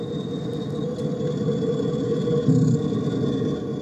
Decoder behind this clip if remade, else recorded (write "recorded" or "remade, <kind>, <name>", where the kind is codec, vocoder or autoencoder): recorded